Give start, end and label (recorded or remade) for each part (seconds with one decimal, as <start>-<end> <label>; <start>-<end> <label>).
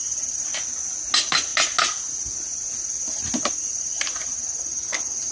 0.0-5.3 recorded